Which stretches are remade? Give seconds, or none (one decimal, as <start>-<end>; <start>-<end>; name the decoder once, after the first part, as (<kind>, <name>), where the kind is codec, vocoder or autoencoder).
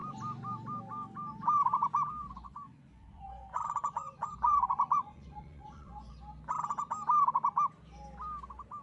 2.2-6.1 (vocoder, Vocos)